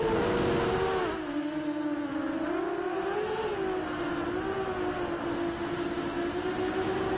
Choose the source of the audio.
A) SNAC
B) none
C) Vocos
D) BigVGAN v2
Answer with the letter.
B